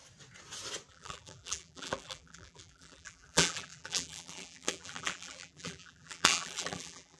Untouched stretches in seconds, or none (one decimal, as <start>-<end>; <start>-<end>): 0.0-0.9